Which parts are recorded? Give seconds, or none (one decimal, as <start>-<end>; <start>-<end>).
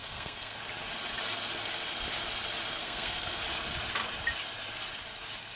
0.6-2.8; 3.4-5.6